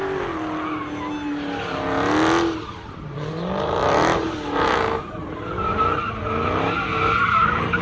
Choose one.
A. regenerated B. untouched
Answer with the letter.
B